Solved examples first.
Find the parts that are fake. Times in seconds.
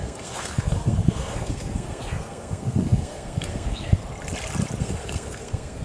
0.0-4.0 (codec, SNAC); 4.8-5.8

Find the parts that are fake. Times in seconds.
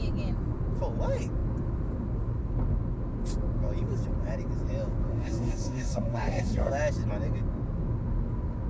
5.1-6.7 (codec, SNAC)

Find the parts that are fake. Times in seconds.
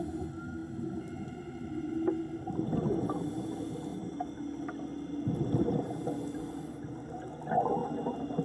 none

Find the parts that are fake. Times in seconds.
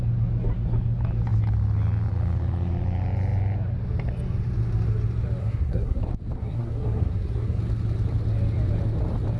5.4-6.0 (codec, SNAC); 6.4-7.6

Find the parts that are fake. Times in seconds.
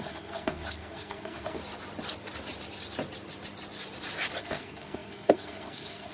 0.0-1.6 (codec, SNAC); 4.4-6.1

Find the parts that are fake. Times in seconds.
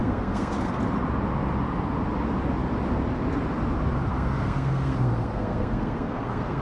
0.0-0.8 (codec, SNAC); 4.1-6.6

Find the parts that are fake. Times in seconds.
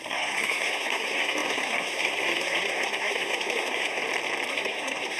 0.0-4.0 (codec, SNAC); 4.5-5.2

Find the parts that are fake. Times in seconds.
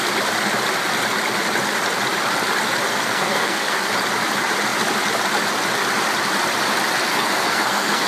2.9-3.9 (codec, SNAC); 7.1-8.1